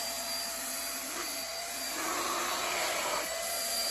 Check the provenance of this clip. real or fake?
fake